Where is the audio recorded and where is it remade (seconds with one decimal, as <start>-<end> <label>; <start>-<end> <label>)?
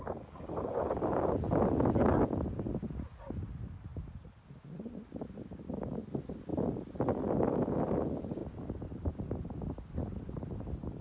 0.0-11.0 recorded